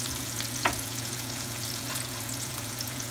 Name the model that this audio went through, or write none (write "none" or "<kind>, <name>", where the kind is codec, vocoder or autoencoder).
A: vocoder, Vocos